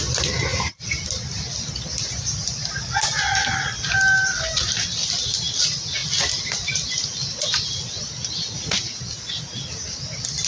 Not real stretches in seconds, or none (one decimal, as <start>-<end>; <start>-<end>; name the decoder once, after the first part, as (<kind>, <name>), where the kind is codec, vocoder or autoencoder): none